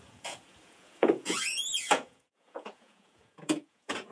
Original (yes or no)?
no